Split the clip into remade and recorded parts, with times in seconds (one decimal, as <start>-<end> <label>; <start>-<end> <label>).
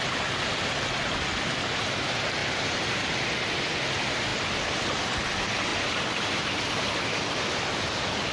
0.0-2.4 recorded; 2.4-3.1 remade; 3.1-5.7 recorded; 5.7-6.8 remade; 6.8-8.3 recorded